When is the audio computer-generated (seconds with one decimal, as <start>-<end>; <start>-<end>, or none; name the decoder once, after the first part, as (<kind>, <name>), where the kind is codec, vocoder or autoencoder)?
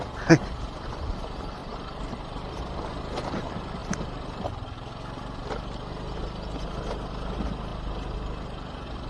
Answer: 1.6-2.6 (vocoder, BigVGAN v2); 3.8-4.5; 7.7-9.1